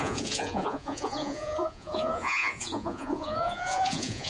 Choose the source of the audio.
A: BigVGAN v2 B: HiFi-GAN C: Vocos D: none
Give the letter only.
C